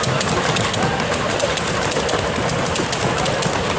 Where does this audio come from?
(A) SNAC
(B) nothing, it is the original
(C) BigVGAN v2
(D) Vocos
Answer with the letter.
B